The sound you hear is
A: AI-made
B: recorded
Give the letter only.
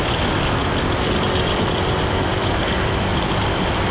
A